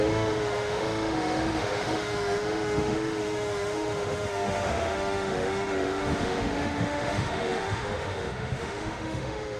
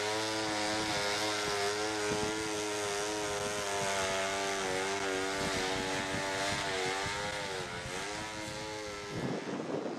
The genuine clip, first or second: second